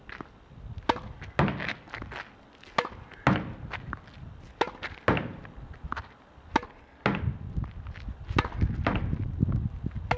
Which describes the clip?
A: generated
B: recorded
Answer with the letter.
B